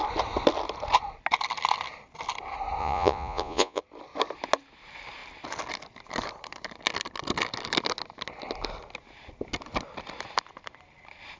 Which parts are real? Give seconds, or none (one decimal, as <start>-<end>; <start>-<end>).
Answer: 0.0-2.8; 3.8-11.4